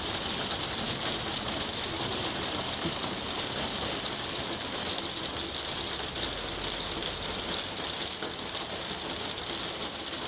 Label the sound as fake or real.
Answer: real